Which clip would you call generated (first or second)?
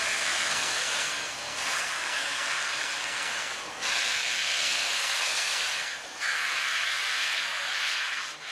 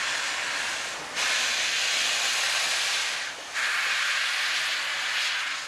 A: first